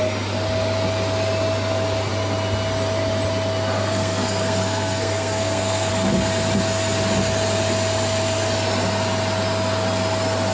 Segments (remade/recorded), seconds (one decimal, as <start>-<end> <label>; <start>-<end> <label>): 0.0-3.8 recorded; 3.8-5.9 remade; 5.9-10.5 recorded